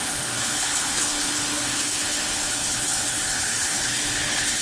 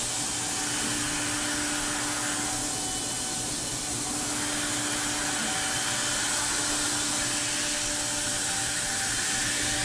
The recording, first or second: second